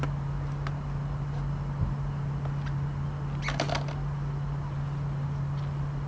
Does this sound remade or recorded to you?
recorded